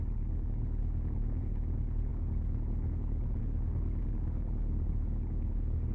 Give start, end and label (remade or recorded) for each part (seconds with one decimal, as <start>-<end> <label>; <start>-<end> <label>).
0.0-5.9 remade